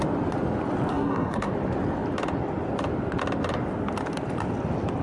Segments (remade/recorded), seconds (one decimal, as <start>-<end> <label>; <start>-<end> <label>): 0.0-0.9 recorded; 0.9-1.5 remade; 1.5-5.0 recorded

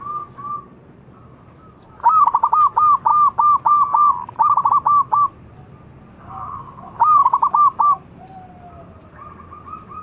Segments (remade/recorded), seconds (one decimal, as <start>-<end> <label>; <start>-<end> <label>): 0.0-0.7 recorded; 0.7-2.5 remade; 2.5-10.0 recorded

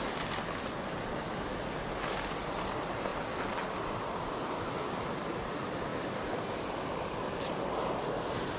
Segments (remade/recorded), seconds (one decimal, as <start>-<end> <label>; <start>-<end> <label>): 0.0-5.9 recorded; 5.9-8.1 remade; 8.1-8.6 recorded

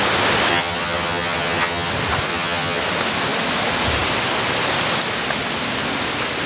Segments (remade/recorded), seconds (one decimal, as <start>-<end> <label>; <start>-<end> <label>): 0.0-0.5 recorded; 0.5-1.9 remade; 1.9-2.3 recorded; 2.3-2.8 remade; 2.8-6.5 recorded

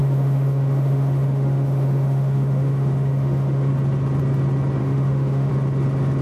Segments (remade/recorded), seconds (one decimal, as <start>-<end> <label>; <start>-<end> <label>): 0.0-3.7 remade; 3.7-4.8 recorded; 4.8-5.5 remade; 5.5-6.2 recorded